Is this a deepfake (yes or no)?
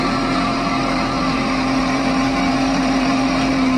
yes